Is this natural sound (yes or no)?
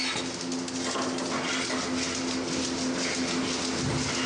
yes